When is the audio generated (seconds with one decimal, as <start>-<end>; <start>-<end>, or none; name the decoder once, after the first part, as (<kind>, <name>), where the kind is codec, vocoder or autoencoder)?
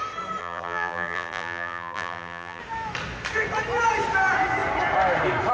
0.4-2.6 (vocoder, BigVGAN v2)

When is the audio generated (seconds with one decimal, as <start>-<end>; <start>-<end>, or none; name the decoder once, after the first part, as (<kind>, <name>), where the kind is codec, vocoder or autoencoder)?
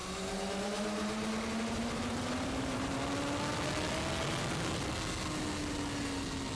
0.0-3.0 (vocoder, BigVGAN v2)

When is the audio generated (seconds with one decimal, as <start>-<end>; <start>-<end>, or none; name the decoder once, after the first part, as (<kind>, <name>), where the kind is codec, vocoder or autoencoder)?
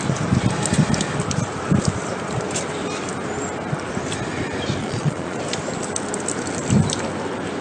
4.8-5.4 (vocoder, Vocos)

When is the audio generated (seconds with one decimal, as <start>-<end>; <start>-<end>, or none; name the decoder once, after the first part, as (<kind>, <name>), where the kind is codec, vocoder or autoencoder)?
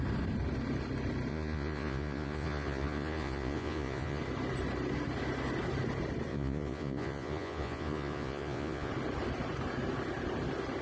1.3-4.2 (vocoder, Vocos); 6.3-8.9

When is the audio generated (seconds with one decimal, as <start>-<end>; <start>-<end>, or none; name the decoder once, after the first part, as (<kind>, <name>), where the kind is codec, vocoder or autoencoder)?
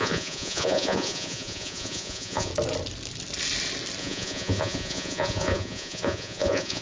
0.0-2.5 (vocoder, Vocos); 4.0-6.8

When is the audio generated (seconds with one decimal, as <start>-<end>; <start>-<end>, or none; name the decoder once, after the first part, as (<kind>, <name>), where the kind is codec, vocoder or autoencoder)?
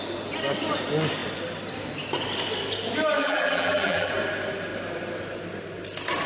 3.2-4.1 (vocoder, BigVGAN v2)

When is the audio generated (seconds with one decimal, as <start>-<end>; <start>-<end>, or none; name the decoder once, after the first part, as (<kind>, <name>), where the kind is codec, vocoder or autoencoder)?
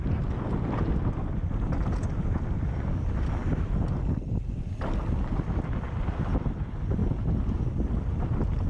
none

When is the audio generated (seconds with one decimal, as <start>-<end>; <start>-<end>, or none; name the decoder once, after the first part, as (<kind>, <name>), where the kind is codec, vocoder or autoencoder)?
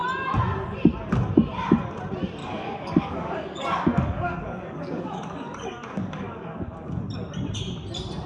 2.4-7.0 (codec, DAC)